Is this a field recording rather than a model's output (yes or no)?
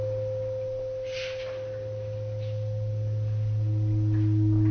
yes